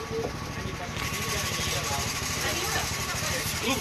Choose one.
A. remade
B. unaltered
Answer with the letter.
B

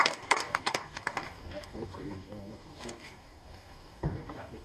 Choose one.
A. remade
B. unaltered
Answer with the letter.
A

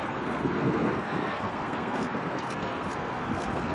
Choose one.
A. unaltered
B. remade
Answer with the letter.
B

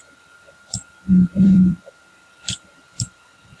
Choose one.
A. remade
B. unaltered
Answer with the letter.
A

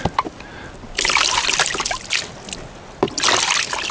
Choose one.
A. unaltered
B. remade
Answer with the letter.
A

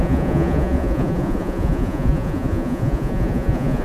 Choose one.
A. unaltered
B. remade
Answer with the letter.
B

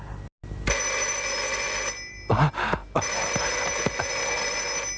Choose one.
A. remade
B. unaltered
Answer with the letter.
B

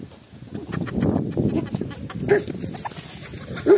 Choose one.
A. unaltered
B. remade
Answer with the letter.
A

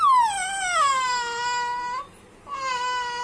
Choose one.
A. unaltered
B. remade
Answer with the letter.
A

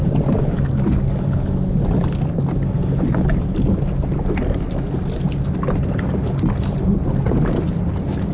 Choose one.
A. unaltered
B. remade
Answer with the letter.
A